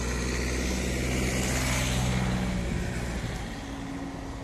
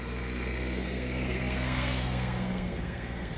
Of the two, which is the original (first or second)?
first